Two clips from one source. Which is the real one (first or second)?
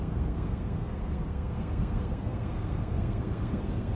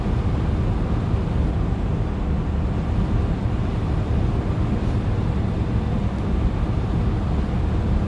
second